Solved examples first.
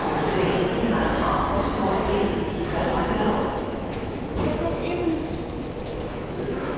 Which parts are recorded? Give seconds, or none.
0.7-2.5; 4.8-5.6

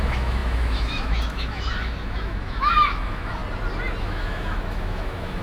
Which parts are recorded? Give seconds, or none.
3.4-4.0

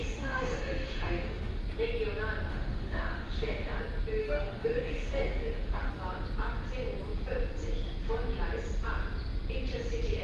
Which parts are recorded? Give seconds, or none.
1.6-2.5; 3.8-4.2; 5.9-10.2